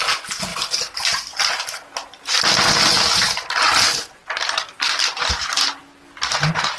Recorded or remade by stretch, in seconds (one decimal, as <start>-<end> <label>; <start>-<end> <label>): 0.0-4.2 recorded; 4.2-5.8 remade; 5.8-6.8 recorded